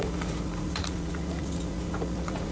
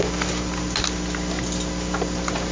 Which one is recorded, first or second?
second